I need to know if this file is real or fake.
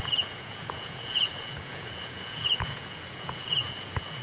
fake